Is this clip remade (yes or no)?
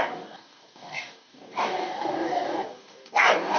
yes